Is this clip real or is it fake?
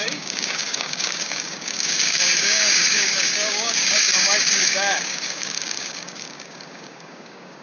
fake